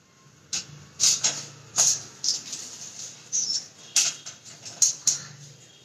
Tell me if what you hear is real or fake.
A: real